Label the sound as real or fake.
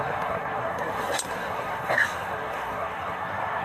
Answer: fake